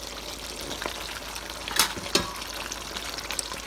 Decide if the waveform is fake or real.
real